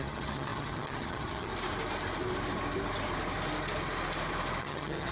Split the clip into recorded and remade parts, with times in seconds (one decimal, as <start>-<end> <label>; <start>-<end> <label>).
0.0-1.5 remade; 1.5-4.6 recorded; 4.6-5.1 remade